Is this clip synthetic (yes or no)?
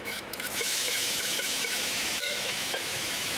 yes